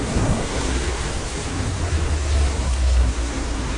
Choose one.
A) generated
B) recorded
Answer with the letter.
A